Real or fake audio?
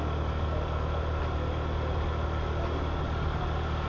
real